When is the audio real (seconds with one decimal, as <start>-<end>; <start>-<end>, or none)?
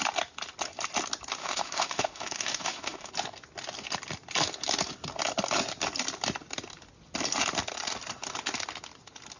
0.0-1.4; 3.1-9.4